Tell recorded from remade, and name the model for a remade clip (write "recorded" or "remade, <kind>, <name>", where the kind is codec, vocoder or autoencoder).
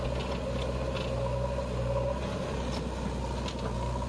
recorded